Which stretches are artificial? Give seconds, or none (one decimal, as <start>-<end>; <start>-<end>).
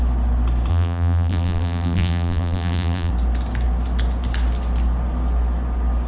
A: 0.7-3.1